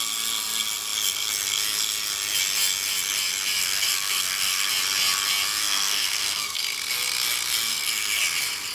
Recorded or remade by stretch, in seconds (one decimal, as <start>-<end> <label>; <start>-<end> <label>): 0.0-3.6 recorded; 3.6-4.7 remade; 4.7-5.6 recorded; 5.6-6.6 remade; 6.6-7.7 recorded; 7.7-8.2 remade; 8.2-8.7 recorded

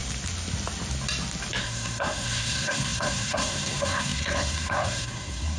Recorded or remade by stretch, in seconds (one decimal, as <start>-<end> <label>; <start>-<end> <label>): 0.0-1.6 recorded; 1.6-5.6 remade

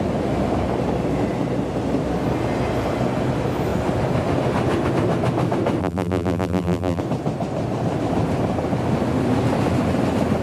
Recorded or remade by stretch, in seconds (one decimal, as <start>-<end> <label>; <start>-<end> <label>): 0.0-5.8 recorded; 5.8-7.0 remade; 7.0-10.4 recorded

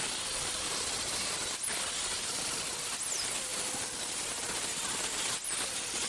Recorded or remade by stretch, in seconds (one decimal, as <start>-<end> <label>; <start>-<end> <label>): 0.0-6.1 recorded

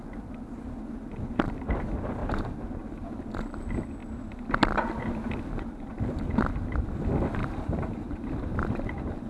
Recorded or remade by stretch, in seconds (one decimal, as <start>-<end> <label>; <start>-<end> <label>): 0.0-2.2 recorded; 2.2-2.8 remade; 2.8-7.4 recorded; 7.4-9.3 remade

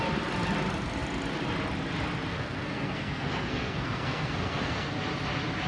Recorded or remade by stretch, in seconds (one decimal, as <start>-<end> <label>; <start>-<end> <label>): 0.0-2.3 recorded; 2.3-4.9 remade; 4.9-5.7 recorded

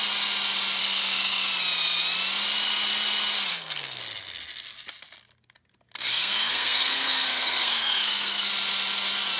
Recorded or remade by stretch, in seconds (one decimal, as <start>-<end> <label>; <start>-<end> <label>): 0.0-0.8 recorded; 0.8-1.5 remade; 1.5-3.5 recorded; 3.5-4.0 remade; 4.0-6.1 recorded; 6.1-8.5 remade; 8.5-9.4 recorded